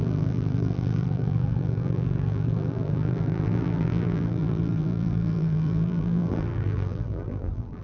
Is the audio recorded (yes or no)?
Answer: no